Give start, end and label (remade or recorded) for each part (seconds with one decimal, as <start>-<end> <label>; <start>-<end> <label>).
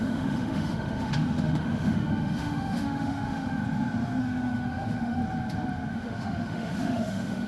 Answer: 0.0-3.6 remade; 3.6-4.2 recorded; 4.2-5.2 remade; 5.2-5.9 recorded; 5.9-7.5 remade